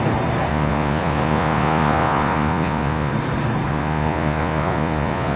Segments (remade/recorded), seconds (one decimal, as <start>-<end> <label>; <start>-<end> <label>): 0.0-0.5 recorded; 0.5-3.1 remade; 3.1-3.7 recorded; 3.7-5.4 remade